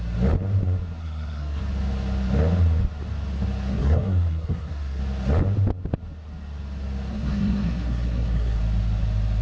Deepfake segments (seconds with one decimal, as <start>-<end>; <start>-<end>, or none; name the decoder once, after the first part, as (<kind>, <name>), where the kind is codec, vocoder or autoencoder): 1.0-1.6 (codec, SNAC); 3.7-5.0; 7.1-8.6

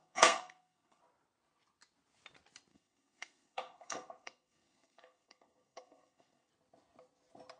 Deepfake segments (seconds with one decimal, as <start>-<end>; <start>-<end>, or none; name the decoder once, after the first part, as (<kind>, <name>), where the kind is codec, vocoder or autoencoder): 0.0-1.0 (codec, SNAC); 2.7-6.5